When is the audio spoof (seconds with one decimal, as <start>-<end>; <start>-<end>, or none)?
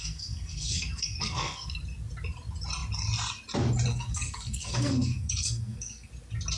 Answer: 0.0-1.8; 3.9-6.1